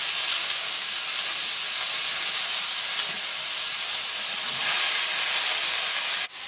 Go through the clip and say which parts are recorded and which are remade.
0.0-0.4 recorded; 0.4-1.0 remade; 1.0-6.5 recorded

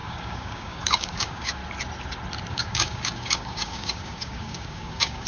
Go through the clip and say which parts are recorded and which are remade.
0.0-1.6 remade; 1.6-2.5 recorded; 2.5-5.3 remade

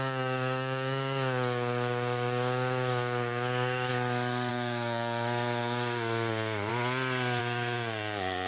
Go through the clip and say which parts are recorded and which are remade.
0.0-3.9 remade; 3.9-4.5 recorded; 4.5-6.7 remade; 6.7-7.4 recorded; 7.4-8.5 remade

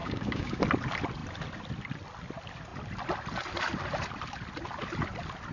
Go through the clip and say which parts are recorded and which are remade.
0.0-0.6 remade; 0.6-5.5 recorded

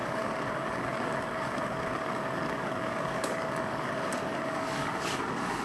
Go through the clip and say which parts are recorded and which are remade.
0.0-5.6 remade